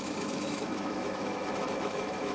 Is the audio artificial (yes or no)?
yes